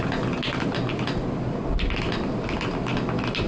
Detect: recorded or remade recorded